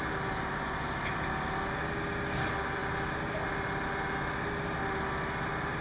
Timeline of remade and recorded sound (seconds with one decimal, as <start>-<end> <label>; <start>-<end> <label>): 0.0-5.8 recorded